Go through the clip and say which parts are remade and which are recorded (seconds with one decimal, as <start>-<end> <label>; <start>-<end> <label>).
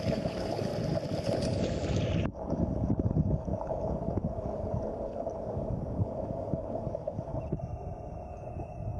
0.0-0.7 remade; 0.7-2.2 recorded; 2.2-7.3 remade; 7.3-8.3 recorded; 8.3-9.0 remade